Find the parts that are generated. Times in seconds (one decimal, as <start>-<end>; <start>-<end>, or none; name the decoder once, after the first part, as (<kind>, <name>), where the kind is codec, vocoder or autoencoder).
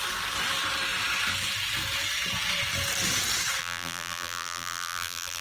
3.6-5.4 (vocoder, BigVGAN v2)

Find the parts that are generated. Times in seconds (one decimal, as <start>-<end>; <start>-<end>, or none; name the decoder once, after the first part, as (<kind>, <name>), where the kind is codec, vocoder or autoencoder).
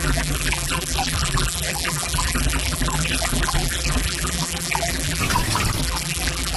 0.0-5.2 (vocoder, BigVGAN v2); 5.8-6.6